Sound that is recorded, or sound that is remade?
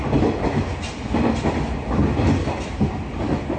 recorded